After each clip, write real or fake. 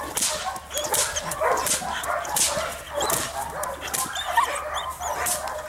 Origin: real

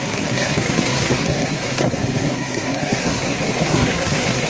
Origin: fake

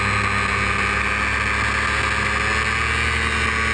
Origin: real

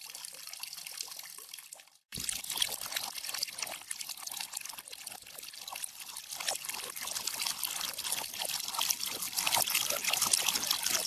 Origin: fake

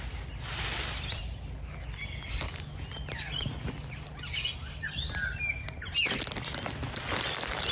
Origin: real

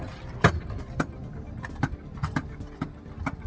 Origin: real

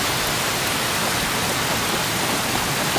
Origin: real